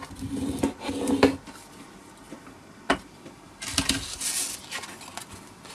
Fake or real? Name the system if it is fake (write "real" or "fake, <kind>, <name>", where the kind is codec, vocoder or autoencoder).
real